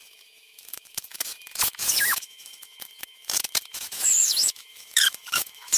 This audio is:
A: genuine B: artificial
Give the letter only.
B